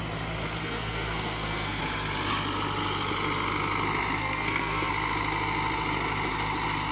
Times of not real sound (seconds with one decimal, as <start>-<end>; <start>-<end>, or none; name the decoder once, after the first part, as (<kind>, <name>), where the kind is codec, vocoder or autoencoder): 0.6-1.8 (codec, SNAC); 4.2-4.9